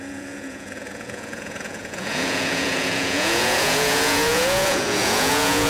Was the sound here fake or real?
fake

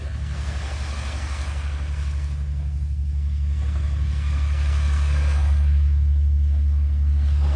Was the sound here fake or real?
fake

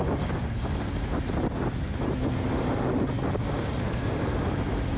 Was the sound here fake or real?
real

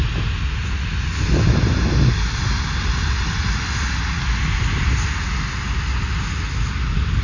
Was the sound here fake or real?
real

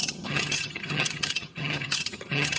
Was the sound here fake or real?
fake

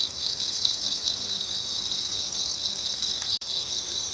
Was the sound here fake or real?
fake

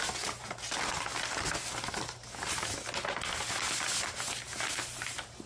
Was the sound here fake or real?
real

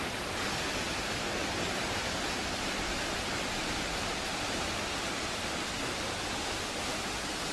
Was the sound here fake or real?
real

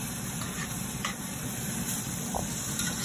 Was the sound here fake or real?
fake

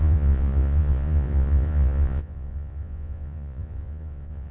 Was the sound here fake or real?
fake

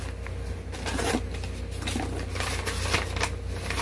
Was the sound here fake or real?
real